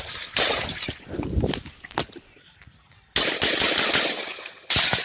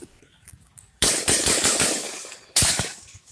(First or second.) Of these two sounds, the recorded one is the first